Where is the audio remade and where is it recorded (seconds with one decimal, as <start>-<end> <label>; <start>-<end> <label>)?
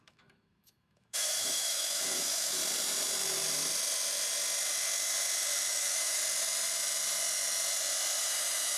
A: 0.0-2.6 remade; 2.6-5.7 recorded; 5.7-6.2 remade; 6.2-8.2 recorded; 8.2-8.8 remade